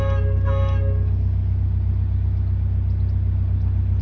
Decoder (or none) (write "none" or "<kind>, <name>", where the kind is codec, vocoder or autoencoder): none